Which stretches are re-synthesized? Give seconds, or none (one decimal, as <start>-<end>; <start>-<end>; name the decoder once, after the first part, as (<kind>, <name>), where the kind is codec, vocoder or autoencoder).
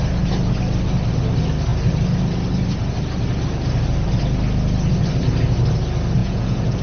6.2-6.8 (vocoder, Vocos)